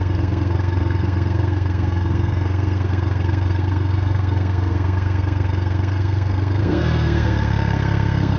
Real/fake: fake